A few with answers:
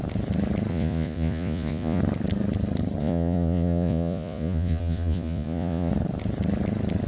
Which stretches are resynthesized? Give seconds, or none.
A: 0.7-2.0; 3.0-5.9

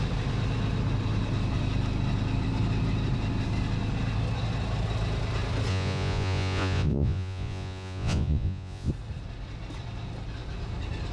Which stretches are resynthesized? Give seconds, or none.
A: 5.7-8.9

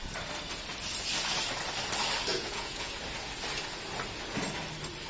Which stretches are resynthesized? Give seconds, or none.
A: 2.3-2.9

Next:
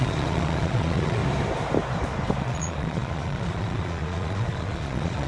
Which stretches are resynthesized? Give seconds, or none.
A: 0.0-1.2; 2.4-5.3

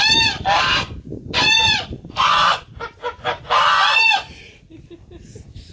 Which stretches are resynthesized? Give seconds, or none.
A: 1.1-2.6; 3.7-4.4

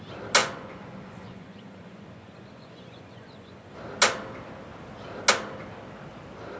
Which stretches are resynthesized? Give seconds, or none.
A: 0.4-3.7

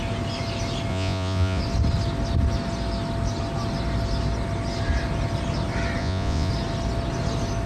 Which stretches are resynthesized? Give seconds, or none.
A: 0.9-1.6; 6.0-6.5

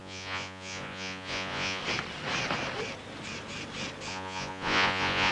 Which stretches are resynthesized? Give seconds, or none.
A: 0.0-1.8; 4.1-5.3